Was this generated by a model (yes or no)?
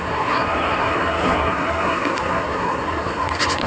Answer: yes